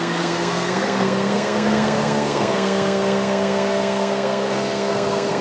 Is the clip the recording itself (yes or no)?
no